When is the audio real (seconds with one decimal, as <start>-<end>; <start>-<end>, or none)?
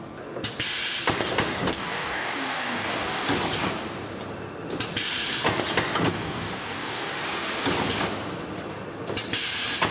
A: 0.0-1.7; 3.2-6.1; 7.1-9.9